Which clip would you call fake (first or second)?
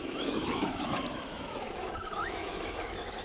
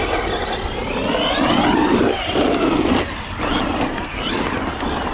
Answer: first